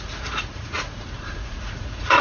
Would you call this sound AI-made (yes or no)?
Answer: yes